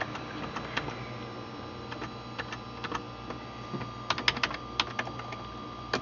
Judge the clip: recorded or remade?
recorded